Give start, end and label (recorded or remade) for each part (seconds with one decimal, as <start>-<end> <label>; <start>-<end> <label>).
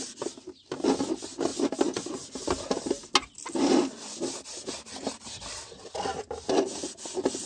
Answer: 0.0-7.5 recorded